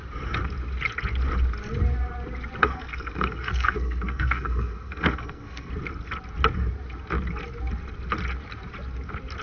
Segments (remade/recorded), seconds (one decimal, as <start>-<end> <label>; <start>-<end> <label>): 0.0-2.6 recorded; 2.6-5.7 remade; 5.7-9.4 recorded